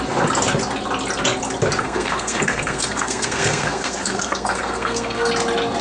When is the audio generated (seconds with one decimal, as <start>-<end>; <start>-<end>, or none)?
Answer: 1.8-5.3